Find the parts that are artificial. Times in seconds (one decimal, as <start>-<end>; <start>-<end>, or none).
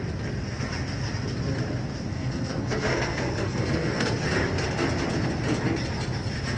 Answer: 2.1-4.2